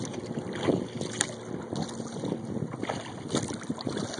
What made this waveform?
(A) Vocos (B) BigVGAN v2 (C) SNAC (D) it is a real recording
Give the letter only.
D